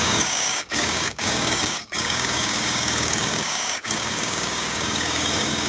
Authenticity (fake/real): fake